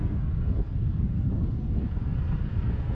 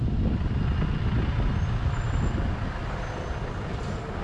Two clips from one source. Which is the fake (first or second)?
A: first